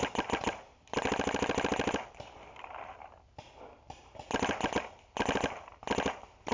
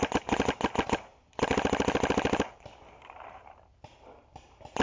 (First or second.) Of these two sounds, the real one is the first